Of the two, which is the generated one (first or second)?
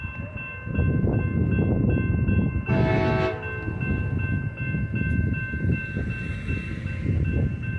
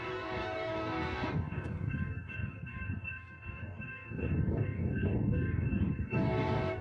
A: second